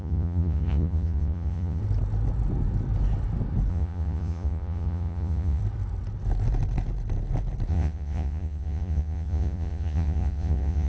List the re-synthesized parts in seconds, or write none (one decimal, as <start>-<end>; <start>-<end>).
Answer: 0.0-1.8; 3.7-5.6; 7.7-10.9